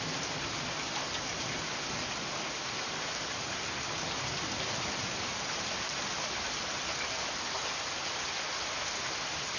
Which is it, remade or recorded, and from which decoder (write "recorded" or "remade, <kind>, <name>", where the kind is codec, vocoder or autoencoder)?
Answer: recorded